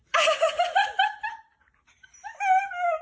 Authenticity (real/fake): real